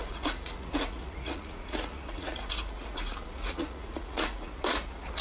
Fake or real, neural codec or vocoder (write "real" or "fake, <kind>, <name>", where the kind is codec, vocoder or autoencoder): fake, vocoder, Vocos